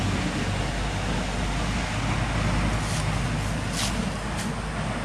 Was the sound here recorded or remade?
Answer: recorded